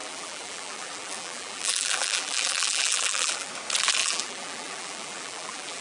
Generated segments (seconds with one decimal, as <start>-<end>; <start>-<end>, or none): 0.0-3.5; 4.0-5.8